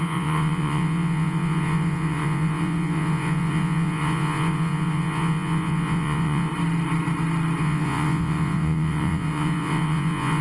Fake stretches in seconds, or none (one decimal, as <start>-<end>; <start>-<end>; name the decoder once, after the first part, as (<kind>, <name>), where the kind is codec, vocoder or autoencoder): 0.0-6.5 (vocoder, Vocos); 7.6-10.4